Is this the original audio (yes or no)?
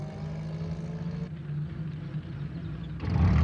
yes